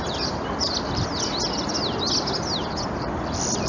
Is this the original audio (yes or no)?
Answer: yes